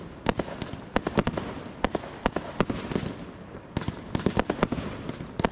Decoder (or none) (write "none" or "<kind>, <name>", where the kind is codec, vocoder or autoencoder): none